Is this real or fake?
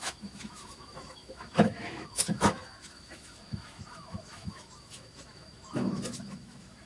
fake